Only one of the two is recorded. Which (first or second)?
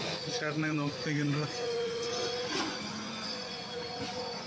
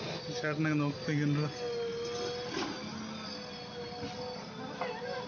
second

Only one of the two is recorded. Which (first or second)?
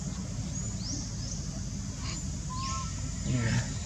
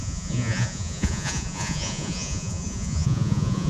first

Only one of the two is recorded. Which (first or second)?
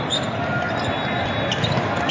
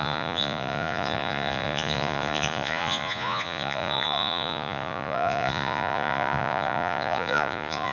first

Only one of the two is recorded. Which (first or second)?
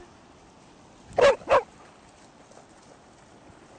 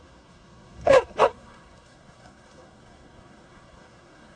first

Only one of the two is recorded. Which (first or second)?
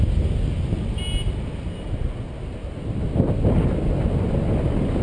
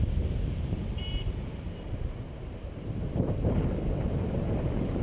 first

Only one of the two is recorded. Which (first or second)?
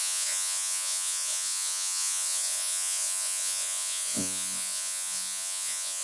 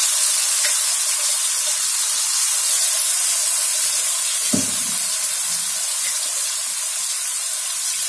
second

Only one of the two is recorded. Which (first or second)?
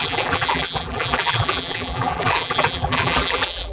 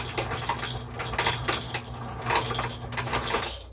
second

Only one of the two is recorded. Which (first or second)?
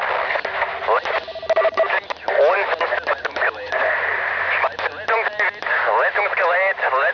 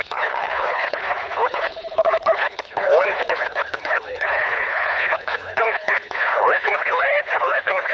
first